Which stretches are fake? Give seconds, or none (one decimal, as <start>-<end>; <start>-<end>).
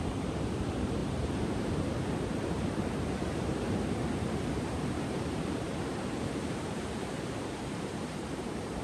0.0-8.8